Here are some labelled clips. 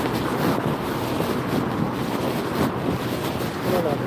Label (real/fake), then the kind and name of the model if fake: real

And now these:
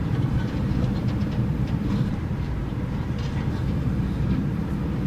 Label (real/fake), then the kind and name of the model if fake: fake, vocoder, BigVGAN v2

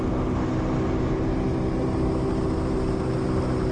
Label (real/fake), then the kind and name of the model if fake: real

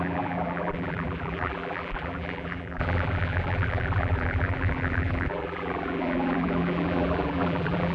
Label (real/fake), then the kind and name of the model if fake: fake, vocoder, BigVGAN v2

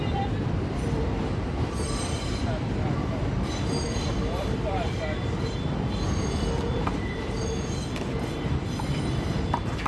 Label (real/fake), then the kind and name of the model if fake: fake, vocoder, BigVGAN v2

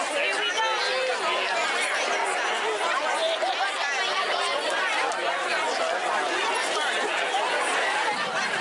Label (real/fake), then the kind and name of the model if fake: real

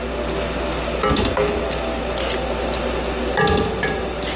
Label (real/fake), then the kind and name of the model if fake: real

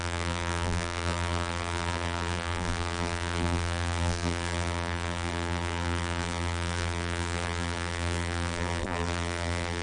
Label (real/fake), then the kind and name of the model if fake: fake, vocoder, BigVGAN v2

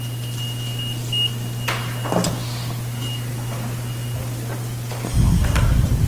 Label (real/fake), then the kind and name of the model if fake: real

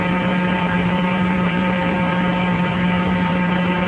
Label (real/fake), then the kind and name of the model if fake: fake, vocoder, BigVGAN v2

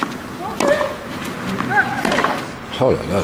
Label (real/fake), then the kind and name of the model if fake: real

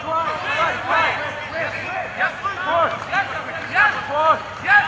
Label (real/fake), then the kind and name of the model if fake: fake, vocoder, BigVGAN v2